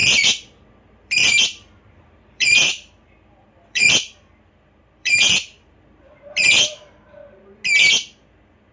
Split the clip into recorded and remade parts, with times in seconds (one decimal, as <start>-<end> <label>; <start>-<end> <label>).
0.0-6.4 remade; 6.4-8.2 recorded; 8.2-8.7 remade